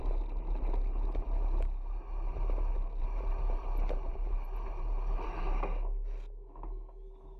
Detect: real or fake real